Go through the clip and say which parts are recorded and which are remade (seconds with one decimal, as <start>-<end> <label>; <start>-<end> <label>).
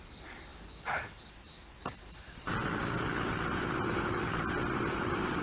0.0-0.5 remade; 0.5-3.7 recorded; 3.7-5.4 remade